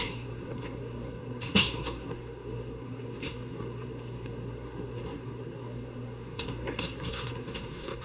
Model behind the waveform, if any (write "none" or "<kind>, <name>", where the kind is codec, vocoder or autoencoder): codec, SNAC